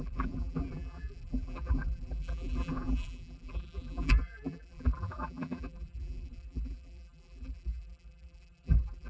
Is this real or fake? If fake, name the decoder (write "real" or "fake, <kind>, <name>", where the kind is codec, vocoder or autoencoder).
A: fake, vocoder, BigVGAN v2